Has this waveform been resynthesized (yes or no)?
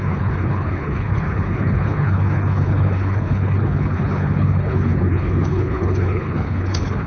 yes